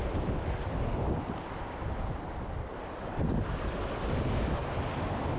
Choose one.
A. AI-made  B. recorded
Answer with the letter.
B